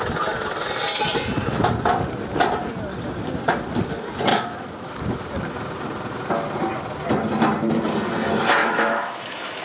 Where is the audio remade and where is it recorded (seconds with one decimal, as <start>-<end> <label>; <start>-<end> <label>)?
0.0-4.3 recorded; 4.3-4.9 remade; 4.9-8.6 recorded; 8.6-9.6 remade